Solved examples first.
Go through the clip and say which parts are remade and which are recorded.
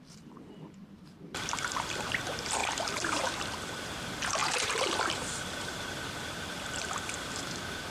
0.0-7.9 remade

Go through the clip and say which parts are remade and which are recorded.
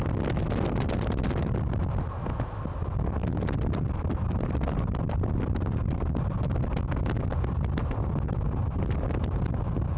0.0-3.2 recorded; 3.2-6.6 remade; 6.6-10.0 recorded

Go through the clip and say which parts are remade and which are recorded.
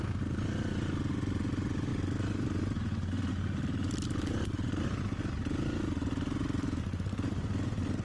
0.0-8.0 recorded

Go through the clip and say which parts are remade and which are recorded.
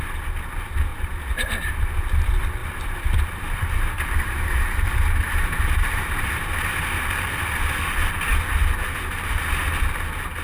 0.0-0.9 recorded; 0.9-1.9 remade; 1.9-2.6 recorded; 2.6-6.0 remade; 6.0-10.4 recorded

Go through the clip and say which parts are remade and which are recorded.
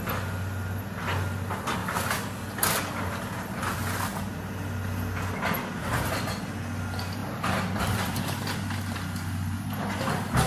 0.0-7.2 recorded; 7.2-8.6 remade; 8.6-10.5 recorded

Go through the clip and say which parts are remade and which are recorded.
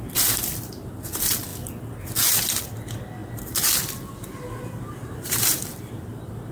0.0-5.0 recorded; 5.0-6.0 remade; 6.0-6.5 recorded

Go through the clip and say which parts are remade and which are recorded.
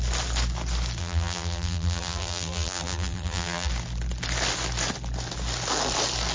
0.0-1.0 recorded; 1.0-3.7 remade; 3.7-6.3 recorded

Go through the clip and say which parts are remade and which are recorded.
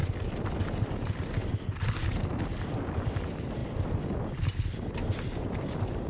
0.0-6.1 recorded